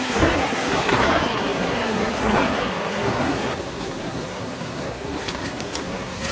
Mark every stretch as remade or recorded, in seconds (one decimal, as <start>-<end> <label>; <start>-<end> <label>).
0.0-6.3 remade

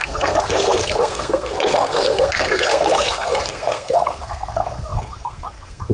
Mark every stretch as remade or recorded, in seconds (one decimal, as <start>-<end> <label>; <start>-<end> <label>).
0.0-5.9 remade

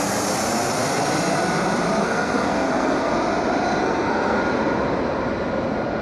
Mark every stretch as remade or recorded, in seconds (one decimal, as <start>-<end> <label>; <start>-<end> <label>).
0.0-2.0 recorded; 2.0-3.1 remade; 3.1-3.8 recorded; 3.8-4.4 remade; 4.4-6.0 recorded